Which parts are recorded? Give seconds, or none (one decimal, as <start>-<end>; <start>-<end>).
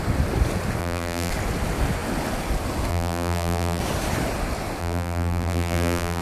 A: 0.0-0.8; 1.3-2.9; 3.8-4.8